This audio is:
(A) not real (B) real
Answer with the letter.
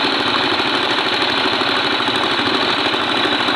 B